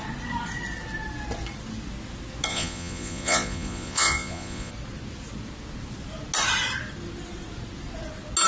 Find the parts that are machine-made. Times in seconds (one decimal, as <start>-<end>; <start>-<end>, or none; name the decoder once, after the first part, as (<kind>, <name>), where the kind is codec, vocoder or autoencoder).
2.5-4.7 (vocoder, Vocos)